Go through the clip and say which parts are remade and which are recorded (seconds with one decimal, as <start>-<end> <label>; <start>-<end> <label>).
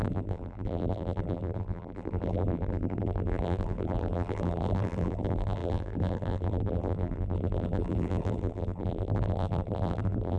0.0-10.4 remade